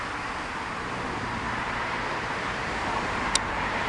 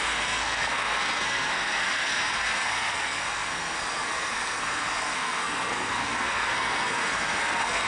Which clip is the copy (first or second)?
second